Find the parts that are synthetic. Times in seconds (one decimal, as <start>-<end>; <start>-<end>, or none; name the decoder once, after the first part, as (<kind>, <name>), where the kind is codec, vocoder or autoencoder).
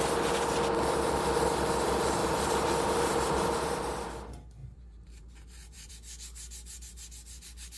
2.2-3.8 (vocoder, BigVGAN v2); 4.6-5.9